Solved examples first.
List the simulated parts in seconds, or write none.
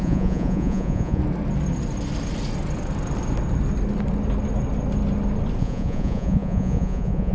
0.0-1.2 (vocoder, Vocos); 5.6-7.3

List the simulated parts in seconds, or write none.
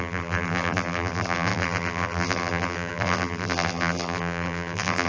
0.0-5.1 (vocoder, BigVGAN v2)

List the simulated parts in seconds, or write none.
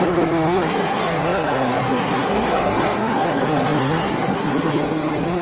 0.0-5.4 (codec, SNAC)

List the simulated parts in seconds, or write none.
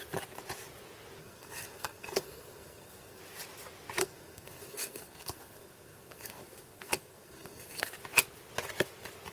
1.2-3.2 (codec, SNAC); 4.0-7.9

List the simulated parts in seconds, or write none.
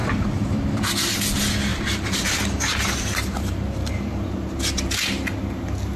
0.0-0.8 (vocoder, BigVGAN v2); 1.7-4.6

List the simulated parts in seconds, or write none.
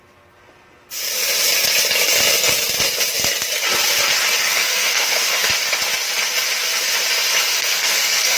4.4-5.5 (codec, SNAC); 7.5-8.4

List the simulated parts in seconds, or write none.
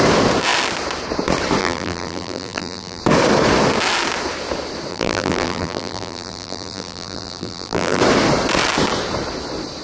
1.6-3.0 (vocoder, BigVGAN v2); 4.9-8.0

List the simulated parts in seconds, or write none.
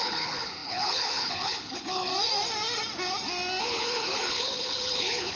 0.0-2.1 (codec, HILCodec); 3.6-5.4